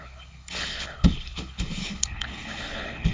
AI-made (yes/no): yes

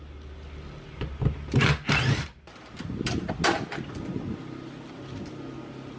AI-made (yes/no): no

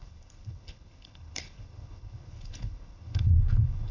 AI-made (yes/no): yes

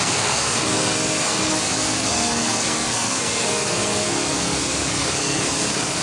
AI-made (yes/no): yes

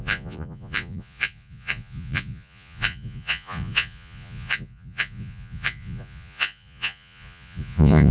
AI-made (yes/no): yes